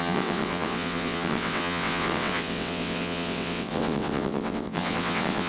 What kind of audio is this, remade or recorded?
remade